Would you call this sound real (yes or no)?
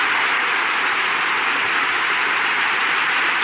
no